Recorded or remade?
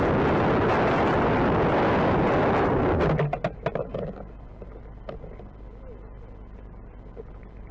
recorded